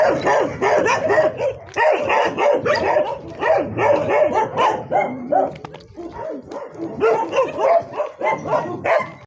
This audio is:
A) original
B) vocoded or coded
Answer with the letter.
A